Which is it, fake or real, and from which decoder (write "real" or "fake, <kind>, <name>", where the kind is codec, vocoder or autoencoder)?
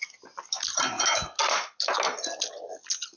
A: real